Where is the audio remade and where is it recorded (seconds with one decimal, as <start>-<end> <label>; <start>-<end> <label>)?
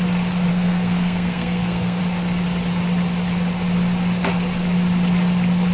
0.0-0.5 recorded; 0.5-2.0 remade; 2.0-5.7 recorded